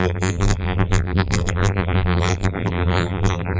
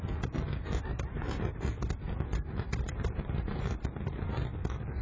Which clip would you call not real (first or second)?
first